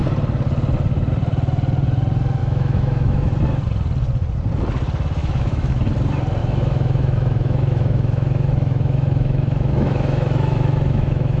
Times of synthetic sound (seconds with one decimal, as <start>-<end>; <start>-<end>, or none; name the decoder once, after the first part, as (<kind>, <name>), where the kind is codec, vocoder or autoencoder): 2.4-3.3 (autoencoder, DAC-VAE); 5.2-5.8; 6.4-11.4